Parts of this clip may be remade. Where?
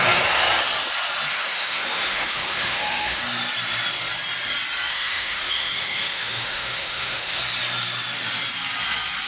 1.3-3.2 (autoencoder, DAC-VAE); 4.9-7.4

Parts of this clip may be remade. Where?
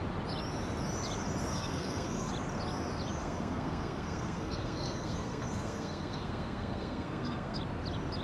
1.5-2.3 (codec, SNAC); 3.2-7.6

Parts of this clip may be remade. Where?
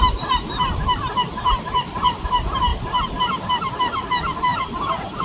0.0-2.7 (vocoder, BigVGAN v2); 3.2-5.2